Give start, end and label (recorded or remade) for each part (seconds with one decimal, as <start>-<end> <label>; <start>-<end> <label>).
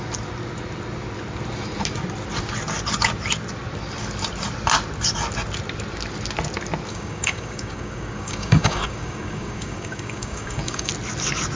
0.0-6.9 recorded; 6.9-10.9 remade; 10.9-11.6 recorded